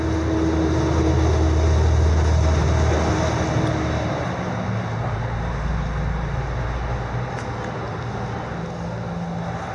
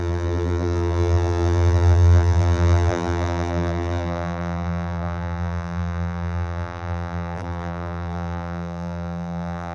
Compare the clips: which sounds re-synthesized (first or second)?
second